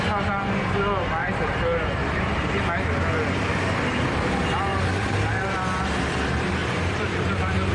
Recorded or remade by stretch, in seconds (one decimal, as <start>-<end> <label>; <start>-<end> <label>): 0.0-1.2 recorded; 1.2-2.2 remade; 2.2-4.7 recorded; 4.7-5.4 remade; 5.4-6.6 recorded; 6.6-7.7 remade